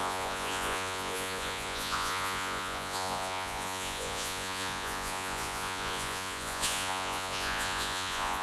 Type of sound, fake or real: fake